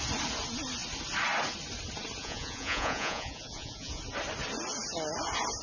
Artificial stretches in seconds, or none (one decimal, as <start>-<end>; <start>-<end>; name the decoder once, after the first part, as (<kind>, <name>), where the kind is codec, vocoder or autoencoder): 2.2-4.0 (vocoder, Vocos)